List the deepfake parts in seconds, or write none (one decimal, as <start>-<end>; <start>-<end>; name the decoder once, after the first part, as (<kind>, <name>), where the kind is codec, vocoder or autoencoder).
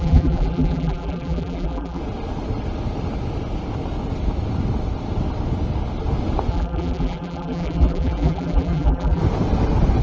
0.0-2.0 (vocoder, BigVGAN v2); 6.5-9.2